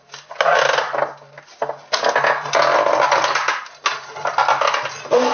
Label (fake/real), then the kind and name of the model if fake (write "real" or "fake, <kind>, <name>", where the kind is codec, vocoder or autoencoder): real